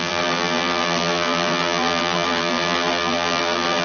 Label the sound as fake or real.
fake